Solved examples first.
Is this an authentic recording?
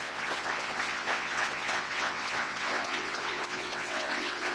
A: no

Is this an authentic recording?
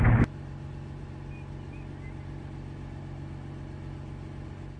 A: yes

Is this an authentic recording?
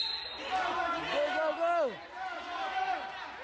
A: yes